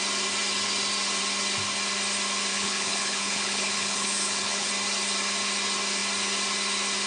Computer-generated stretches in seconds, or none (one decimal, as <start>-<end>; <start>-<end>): 2.5-4.7